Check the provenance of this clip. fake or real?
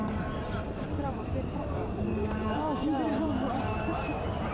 fake